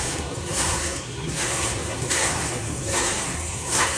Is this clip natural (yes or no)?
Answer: no